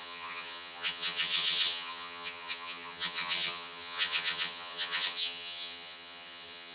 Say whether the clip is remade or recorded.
remade